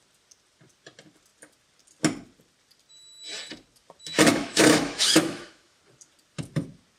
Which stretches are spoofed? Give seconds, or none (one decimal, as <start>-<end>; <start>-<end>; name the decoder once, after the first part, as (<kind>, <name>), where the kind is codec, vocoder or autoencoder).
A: 4.3-5.8 (autoencoder, DAC-VAE)